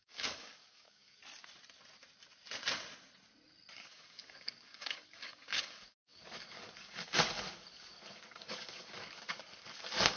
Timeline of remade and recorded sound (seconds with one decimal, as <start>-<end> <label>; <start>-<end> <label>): 0.0-1.2 remade; 1.2-3.7 recorded; 3.7-10.2 remade